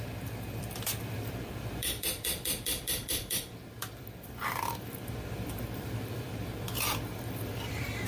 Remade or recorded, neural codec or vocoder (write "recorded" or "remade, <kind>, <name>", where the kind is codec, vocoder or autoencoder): remade, vocoder, BigVGAN v2